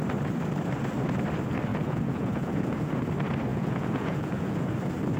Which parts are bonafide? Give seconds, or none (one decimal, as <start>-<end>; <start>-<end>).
0.0-1.7; 3.0-3.5; 4.7-5.2